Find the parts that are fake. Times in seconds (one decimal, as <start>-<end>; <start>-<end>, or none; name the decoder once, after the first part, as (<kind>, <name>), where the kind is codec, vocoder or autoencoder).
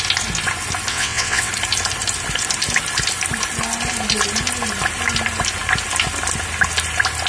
0.9-1.5 (vocoder, WaveNeXt)